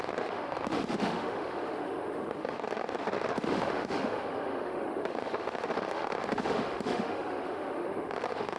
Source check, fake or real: fake